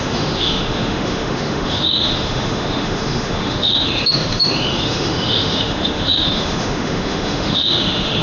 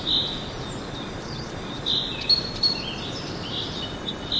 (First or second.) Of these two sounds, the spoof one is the first